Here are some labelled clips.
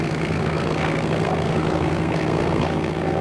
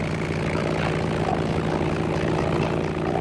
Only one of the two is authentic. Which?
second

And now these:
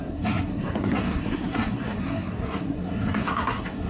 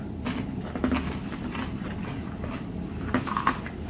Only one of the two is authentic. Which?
second